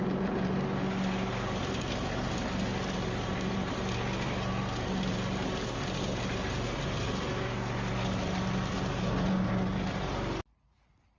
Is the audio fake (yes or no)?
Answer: no